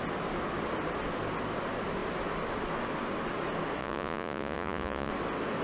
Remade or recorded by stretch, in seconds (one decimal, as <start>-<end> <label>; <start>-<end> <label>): 0.0-3.8 recorded; 3.8-5.1 remade; 5.1-5.6 recorded